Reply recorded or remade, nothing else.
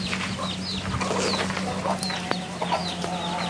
recorded